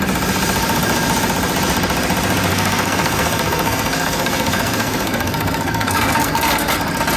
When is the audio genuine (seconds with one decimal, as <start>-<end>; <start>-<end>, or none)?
0.0-2.5; 6.8-7.2